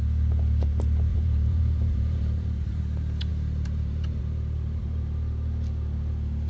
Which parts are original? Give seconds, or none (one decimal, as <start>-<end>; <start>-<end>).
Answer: 0.0-1.1; 2.8-3.3; 4.2-6.5